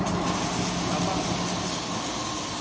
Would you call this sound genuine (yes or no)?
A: yes